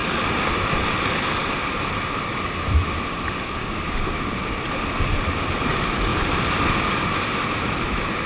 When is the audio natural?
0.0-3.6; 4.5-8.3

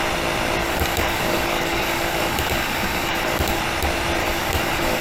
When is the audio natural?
0.0-0.6; 3.6-4.2

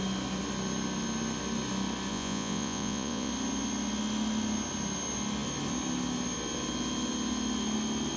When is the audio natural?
0.0-2.1; 3.3-8.2

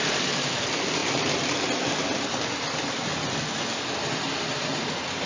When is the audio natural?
0.0-5.3